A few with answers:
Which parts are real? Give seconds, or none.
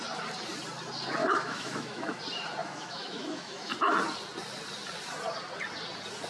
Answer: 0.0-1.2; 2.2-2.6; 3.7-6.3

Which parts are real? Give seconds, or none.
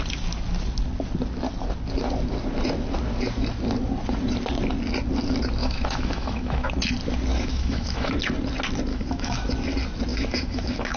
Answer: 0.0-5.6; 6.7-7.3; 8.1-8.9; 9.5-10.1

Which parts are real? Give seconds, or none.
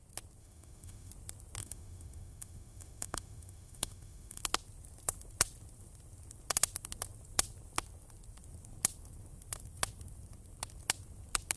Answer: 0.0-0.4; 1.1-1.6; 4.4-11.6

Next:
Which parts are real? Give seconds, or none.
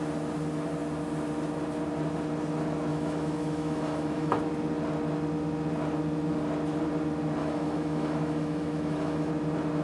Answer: 0.0-2.9; 4.4-7.4; 9.3-9.8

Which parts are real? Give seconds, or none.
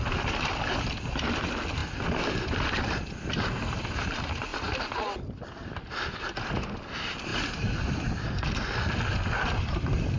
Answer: 0.0-10.2